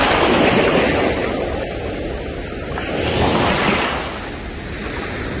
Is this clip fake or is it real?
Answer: real